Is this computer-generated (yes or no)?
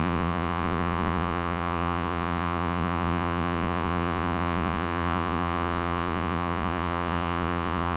yes